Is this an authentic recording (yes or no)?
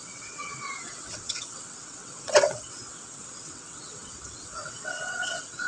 no